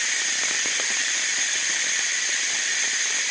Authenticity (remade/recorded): recorded